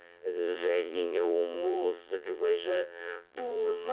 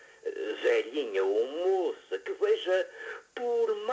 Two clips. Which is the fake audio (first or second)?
first